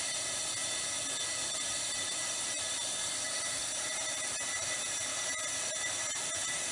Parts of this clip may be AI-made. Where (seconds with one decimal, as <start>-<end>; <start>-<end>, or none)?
none